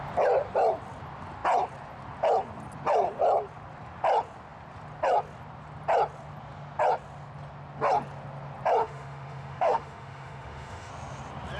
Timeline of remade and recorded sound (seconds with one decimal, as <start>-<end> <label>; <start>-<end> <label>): 0.0-8.8 recorded; 8.8-10.9 remade; 10.9-11.6 recorded